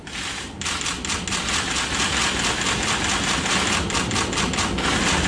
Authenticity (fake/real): real